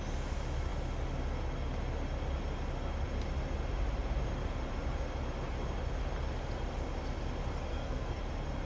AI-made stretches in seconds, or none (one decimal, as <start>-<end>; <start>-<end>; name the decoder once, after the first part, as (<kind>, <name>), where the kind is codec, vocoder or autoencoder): 7.7-8.2 (codec, SNAC)